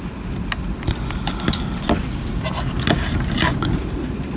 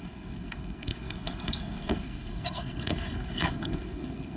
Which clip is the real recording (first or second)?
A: first